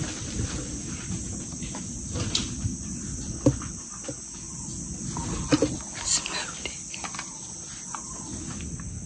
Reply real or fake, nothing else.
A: real